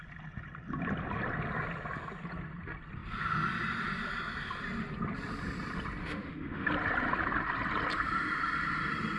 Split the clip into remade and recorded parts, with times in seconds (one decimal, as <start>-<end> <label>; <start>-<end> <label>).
0.0-6.0 recorded; 6.0-6.7 remade; 6.7-9.2 recorded